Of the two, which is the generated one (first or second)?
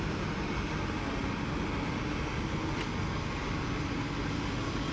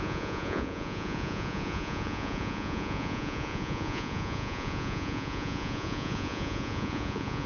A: second